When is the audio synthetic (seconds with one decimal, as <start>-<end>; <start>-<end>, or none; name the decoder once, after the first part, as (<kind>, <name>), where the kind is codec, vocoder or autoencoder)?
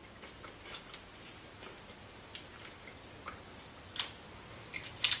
none